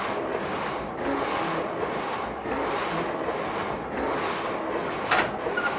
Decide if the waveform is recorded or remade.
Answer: recorded